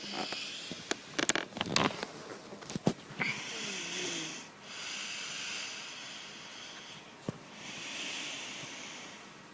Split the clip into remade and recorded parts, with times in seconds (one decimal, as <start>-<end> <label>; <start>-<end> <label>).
0.0-2.5 recorded; 2.5-4.9 remade; 4.9-6.5 recorded; 6.5-9.1 remade; 9.1-9.5 recorded